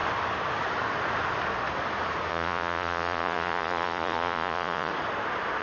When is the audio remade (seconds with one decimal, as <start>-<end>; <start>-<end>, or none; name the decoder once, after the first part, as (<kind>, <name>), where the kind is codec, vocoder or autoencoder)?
2.3-4.9 (vocoder, Vocos)